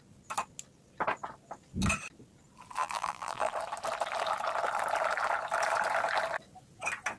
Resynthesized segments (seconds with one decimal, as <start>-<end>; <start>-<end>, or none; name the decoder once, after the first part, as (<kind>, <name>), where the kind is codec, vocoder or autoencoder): 2.8-3.5 (vocoder, BigVGAN v2)